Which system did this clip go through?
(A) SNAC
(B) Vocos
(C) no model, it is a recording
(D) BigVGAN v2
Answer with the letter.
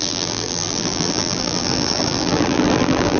D